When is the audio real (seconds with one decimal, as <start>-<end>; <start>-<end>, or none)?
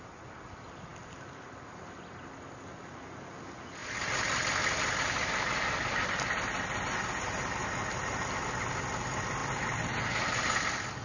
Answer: 0.0-11.0